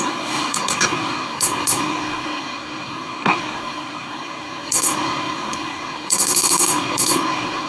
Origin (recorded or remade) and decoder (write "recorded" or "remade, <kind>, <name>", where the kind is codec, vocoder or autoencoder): remade, codec, SNAC